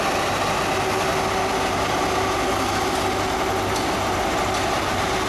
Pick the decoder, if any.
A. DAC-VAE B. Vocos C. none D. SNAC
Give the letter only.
C